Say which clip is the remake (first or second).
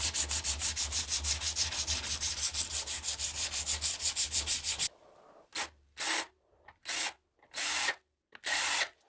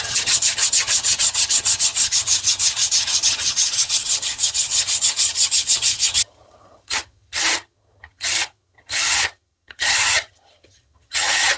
second